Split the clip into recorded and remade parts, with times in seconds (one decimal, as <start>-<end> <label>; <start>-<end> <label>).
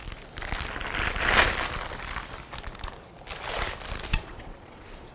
0.0-4.1 recorded; 4.1-5.1 remade